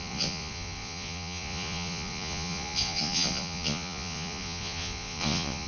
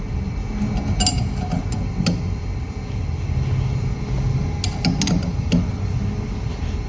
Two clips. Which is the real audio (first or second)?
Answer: second